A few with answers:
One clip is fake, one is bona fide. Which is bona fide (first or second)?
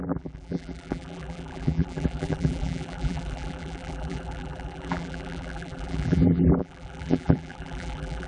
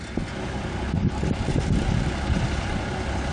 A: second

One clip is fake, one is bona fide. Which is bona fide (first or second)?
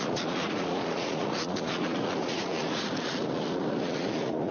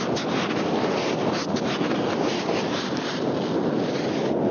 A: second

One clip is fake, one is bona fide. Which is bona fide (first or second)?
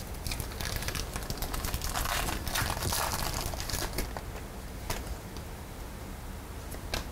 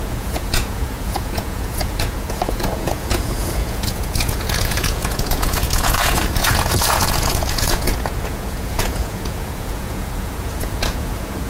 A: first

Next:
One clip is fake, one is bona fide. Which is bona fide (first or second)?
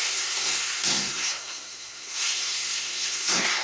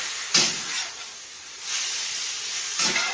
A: second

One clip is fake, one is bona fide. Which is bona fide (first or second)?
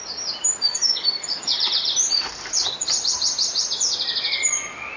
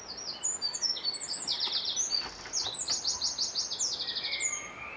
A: second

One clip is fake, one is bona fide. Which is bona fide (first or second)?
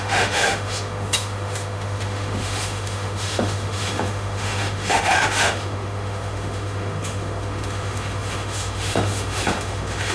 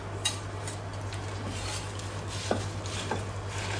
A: second